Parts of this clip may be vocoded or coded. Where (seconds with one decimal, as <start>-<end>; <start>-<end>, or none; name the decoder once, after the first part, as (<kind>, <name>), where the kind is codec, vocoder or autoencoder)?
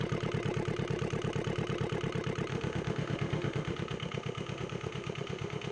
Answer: 2.5-5.7 (autoencoder, DAC-VAE)